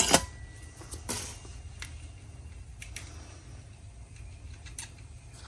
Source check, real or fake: real